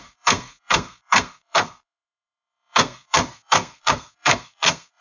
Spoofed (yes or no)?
yes